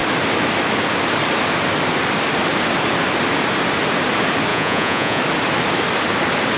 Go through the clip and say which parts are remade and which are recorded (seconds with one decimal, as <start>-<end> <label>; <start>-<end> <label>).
0.0-4.5 recorded; 4.5-5.2 remade; 5.2-6.6 recorded